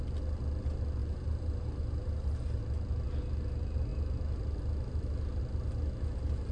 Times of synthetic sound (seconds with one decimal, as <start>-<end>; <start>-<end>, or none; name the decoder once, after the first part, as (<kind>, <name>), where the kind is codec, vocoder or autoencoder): 1.0-2.6 (vocoder, BigVGAN v2)